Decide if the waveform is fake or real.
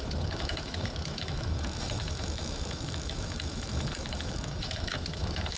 fake